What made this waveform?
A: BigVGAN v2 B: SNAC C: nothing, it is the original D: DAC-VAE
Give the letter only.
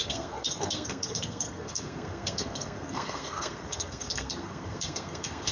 B